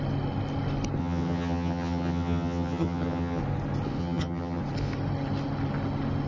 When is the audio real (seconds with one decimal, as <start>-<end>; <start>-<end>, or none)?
0.0-1.0; 3.4-4.0; 4.6-6.3